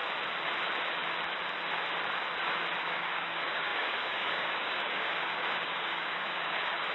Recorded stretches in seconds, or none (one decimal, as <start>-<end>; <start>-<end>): 0.0-2.8